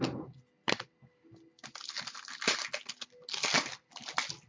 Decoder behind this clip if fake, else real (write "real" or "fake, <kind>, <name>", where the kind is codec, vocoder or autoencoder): real